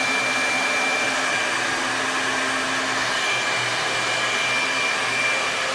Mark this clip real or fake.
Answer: real